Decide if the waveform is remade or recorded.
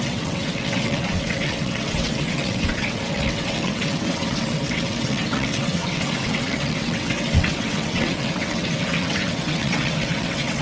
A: remade